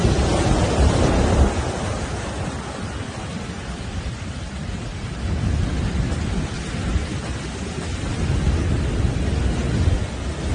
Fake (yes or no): no